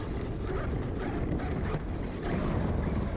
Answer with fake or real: real